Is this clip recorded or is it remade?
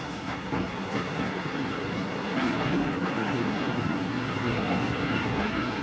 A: remade